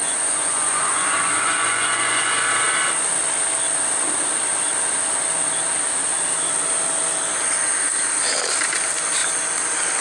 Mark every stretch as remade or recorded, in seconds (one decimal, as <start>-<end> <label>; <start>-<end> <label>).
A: 0.0-2.5 remade; 2.5-10.0 recorded